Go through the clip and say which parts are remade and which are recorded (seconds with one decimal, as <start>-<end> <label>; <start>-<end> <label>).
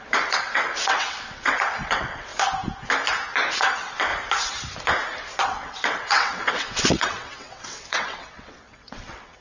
0.0-2.3 remade; 2.3-3.5 recorded; 3.5-4.1 remade; 4.1-5.4 recorded; 5.4-9.4 remade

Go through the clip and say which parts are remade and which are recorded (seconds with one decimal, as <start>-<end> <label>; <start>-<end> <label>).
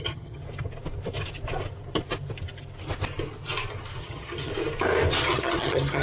0.0-0.4 remade; 0.4-4.0 recorded; 4.0-4.5 remade; 4.5-5.3 recorded; 5.3-6.0 remade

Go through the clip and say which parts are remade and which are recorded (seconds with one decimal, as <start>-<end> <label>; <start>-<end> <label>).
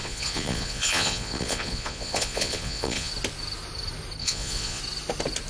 0.0-3.1 remade; 3.1-4.2 recorded; 4.2-4.8 remade; 4.8-5.5 recorded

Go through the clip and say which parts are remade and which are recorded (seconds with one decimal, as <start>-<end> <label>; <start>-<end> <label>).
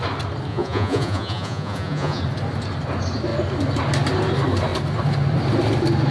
0.0-0.5 recorded; 0.5-2.2 remade; 2.2-6.1 recorded